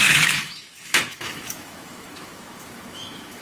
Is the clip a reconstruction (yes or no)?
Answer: yes